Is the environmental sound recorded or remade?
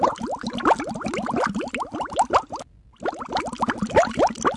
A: recorded